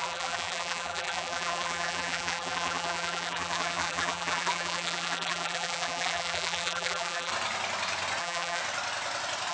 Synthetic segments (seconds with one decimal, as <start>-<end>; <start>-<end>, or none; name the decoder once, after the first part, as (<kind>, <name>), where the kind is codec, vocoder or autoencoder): 0.0-7.3 (vocoder, BigVGAN v2); 8.2-8.6